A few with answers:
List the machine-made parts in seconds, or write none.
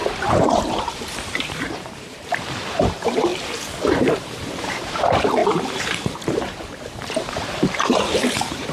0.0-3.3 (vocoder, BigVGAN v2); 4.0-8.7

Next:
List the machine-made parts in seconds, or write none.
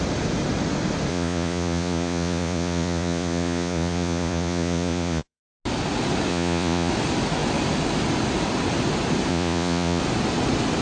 1.1-5.4 (vocoder, Vocos); 6.3-6.9; 9.3-10.0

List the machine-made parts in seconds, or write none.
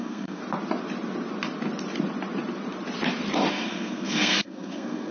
0.0-0.4 (codec, SNAC); 3.5-5.1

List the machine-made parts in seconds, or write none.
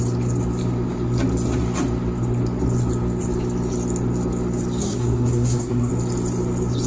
4.8-5.9 (codec, SNAC)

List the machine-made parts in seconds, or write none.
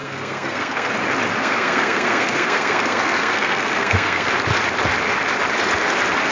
0.0-0.9 (codec, SNAC); 1.4-4.3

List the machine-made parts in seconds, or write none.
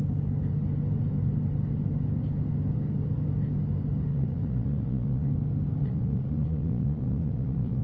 4.1-5.3 (vocoder, Vocos); 5.8-7.8